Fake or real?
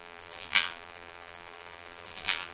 fake